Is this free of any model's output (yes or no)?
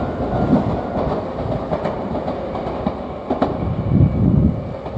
yes